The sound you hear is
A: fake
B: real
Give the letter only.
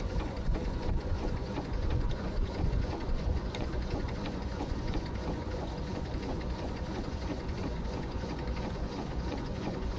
A